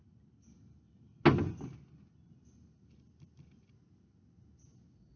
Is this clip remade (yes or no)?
no